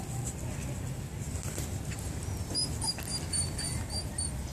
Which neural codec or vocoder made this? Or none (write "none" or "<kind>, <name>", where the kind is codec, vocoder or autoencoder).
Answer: none